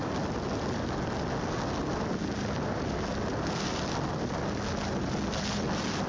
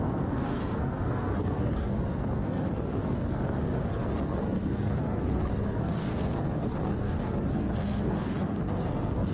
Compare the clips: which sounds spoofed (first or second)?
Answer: second